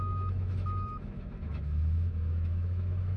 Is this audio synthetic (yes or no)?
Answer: yes